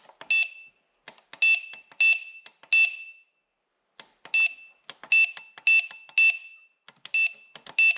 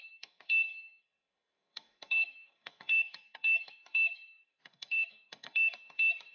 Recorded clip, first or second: first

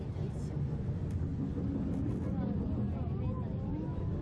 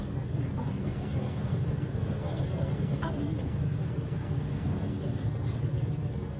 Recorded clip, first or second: first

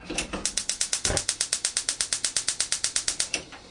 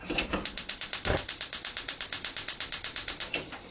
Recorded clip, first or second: first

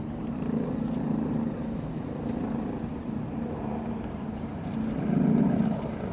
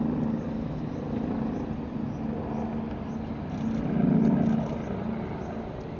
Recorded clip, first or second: second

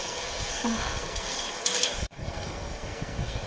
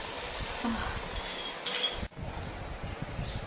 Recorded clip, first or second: second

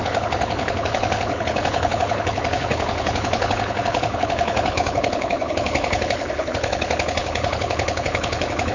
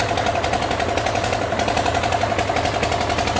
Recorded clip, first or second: second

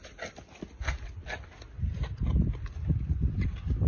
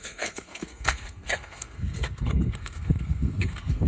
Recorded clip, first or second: first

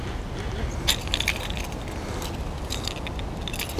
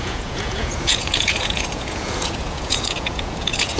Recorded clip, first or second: first